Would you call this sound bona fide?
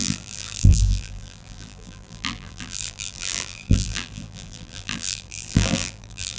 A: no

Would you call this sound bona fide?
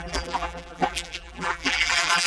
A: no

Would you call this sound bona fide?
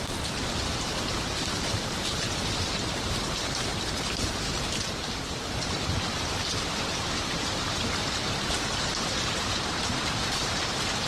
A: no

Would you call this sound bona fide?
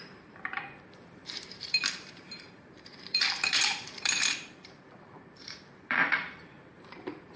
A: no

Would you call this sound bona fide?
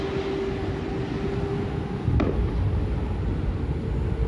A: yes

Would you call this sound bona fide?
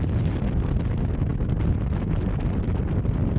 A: yes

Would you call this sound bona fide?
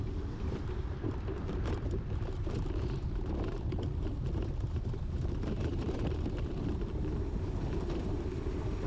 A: no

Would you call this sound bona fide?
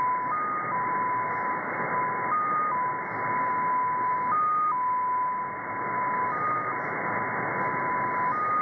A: yes